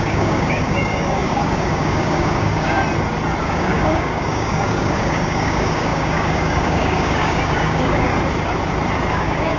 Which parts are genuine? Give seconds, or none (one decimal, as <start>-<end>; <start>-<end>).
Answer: 2.8-3.4; 8.1-9.1